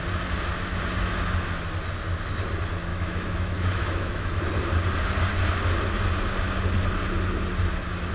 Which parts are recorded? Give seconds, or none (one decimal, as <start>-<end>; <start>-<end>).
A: 0.0-2.9; 4.4-8.1